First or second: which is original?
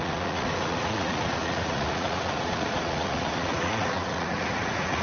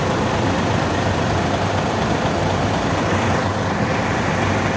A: second